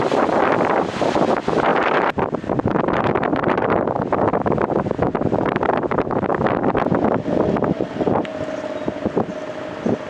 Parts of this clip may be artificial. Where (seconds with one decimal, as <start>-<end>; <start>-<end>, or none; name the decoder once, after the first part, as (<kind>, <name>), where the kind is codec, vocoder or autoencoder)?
1.7-3.9 (vocoder, BigVGAN v2)